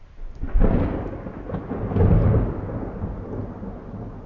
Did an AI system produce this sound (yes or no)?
no